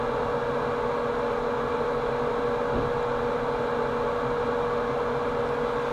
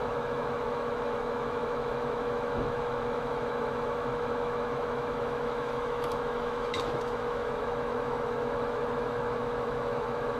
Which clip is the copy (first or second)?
second